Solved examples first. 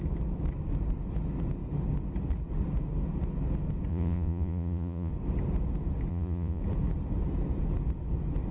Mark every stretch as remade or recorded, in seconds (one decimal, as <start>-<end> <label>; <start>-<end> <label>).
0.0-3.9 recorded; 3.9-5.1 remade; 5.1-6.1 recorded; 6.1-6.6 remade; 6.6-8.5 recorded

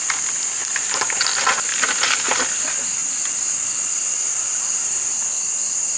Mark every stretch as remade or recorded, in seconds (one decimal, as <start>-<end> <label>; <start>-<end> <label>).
0.0-6.0 recorded

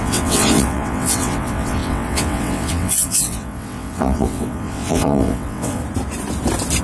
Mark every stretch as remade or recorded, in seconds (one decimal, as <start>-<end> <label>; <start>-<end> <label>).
0.0-5.8 remade; 5.8-6.8 recorded

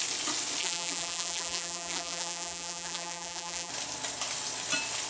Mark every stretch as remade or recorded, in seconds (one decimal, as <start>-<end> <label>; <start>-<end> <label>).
0.0-0.6 recorded; 0.6-3.7 remade; 3.7-5.1 recorded

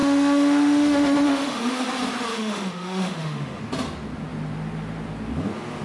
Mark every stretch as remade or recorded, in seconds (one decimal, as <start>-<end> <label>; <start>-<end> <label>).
0.0-1.9 remade; 1.9-2.3 recorded; 2.3-3.6 remade; 3.6-5.8 recorded

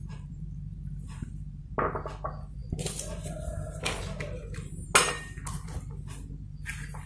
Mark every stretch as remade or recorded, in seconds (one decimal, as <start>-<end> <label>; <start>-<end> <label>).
0.0-1.6 remade; 1.6-2.6 recorded; 2.6-4.0 remade; 4.0-7.1 recorded

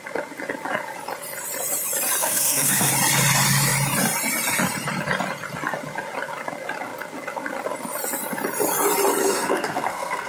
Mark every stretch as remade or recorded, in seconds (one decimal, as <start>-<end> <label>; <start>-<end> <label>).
0.0-2.2 recorded; 2.2-2.9 remade; 2.9-9.2 recorded; 9.2-10.3 remade

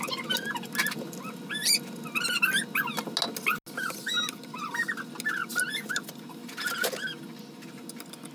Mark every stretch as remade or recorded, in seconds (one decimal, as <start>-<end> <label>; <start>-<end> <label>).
0.0-8.3 recorded